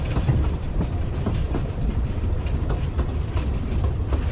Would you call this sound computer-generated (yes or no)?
no